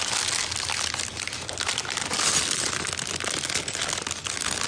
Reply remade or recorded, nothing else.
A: recorded